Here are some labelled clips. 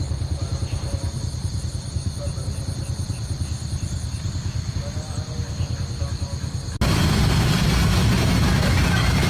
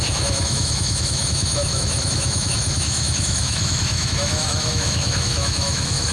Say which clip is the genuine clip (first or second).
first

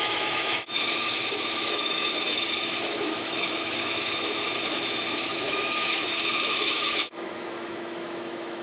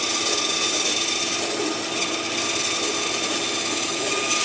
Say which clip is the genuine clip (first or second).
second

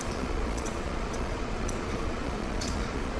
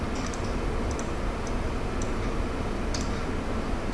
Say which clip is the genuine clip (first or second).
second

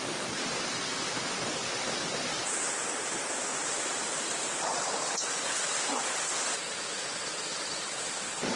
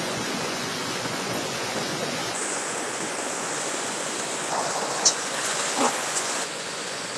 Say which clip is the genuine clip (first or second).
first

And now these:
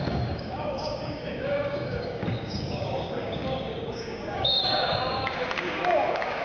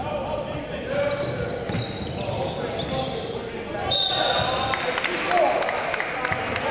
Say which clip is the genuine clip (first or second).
second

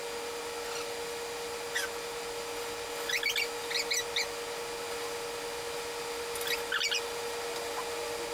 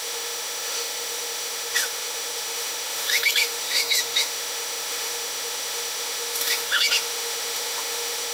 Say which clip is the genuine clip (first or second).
first